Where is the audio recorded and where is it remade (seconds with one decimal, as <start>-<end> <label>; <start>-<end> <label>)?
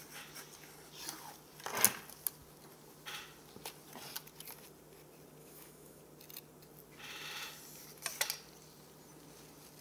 0.0-5.4 recorded; 5.4-6.0 remade; 6.0-9.8 recorded